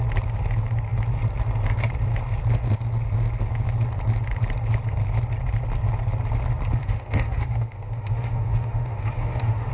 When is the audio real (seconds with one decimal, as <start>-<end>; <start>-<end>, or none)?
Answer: 0.0-6.8